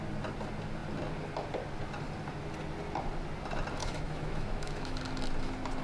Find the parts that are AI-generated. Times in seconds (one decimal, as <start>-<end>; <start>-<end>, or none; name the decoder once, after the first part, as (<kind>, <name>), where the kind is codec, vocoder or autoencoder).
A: 3.8-5.0 (autoencoder, DAC-VAE)